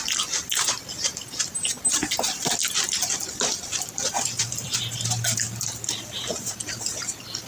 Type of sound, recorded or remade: recorded